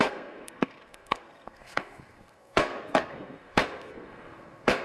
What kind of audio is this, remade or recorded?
remade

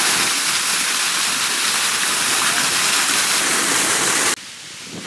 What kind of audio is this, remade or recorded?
recorded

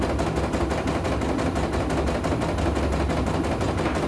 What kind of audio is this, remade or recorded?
recorded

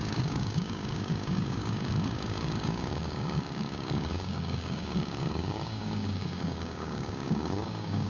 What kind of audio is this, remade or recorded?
remade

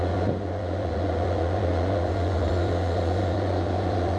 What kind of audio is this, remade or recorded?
remade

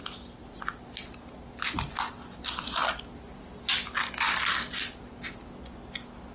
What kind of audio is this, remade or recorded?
recorded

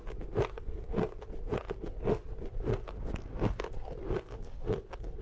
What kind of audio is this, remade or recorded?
recorded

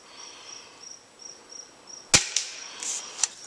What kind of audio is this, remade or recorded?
recorded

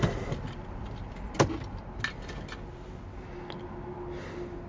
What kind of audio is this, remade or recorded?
recorded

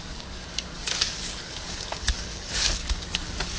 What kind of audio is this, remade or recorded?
remade